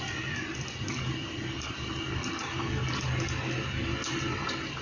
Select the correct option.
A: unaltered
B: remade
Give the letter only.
A